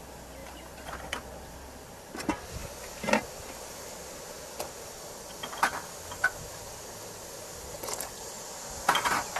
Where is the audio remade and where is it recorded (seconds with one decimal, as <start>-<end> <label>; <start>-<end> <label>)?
0.0-9.4 recorded

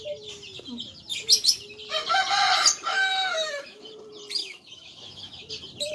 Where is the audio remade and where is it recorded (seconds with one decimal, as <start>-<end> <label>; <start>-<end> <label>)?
0.0-3.1 recorded; 3.1-3.8 remade; 3.8-4.4 recorded; 4.4-5.5 remade; 5.5-5.9 recorded

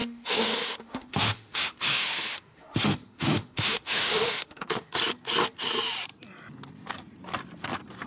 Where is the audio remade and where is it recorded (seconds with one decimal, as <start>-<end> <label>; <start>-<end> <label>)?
0.0-4.9 remade; 4.9-8.1 recorded

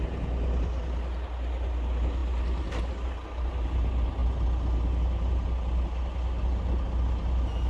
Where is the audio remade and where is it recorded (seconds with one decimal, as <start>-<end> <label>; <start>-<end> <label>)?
0.0-7.7 recorded

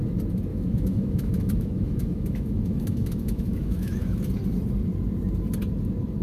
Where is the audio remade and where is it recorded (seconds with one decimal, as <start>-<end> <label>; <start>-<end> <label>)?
0.0-0.5 recorded; 0.5-4.2 remade; 4.2-6.2 recorded

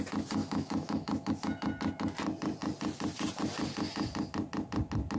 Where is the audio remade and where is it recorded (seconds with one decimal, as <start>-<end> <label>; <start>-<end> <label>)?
0.0-0.4 recorded; 0.4-1.3 remade; 1.3-5.2 recorded